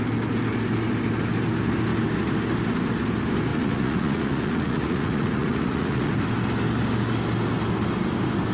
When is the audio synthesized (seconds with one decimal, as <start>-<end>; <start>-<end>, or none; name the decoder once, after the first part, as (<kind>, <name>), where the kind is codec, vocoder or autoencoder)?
3.5-6.1 (vocoder, Vocos)